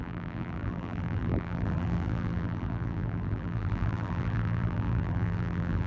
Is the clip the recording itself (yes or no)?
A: no